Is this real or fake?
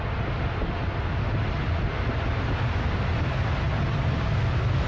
real